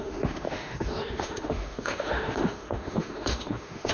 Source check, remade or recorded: remade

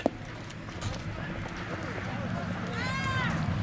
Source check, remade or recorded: recorded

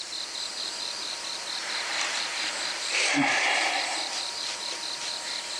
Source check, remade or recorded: remade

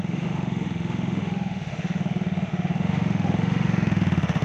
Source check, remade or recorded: remade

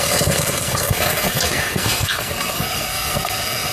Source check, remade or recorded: remade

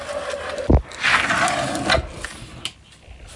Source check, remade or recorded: recorded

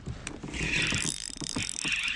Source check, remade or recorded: recorded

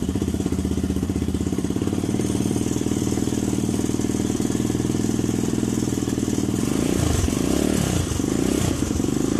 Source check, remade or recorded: remade